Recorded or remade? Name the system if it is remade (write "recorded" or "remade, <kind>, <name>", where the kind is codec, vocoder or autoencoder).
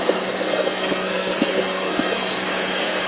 remade, codec, SNAC